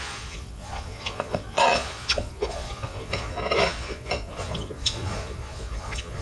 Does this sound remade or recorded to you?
remade